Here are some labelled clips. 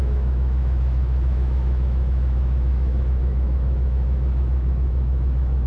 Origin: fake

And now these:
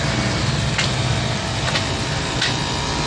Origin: real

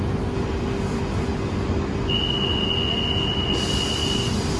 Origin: real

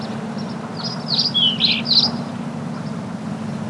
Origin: real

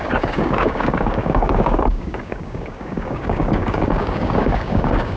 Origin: fake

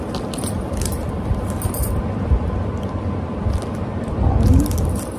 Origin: real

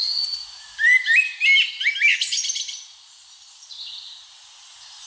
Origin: real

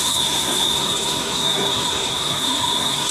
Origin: fake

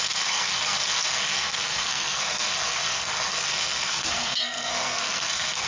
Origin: fake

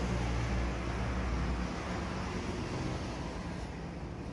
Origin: real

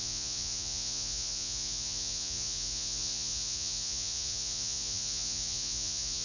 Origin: fake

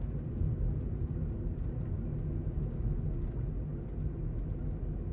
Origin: real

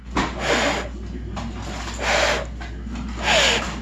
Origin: real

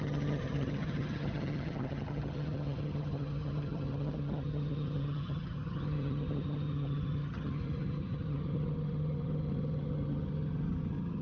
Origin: fake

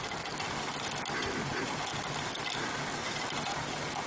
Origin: real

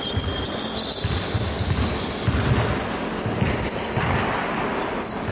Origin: real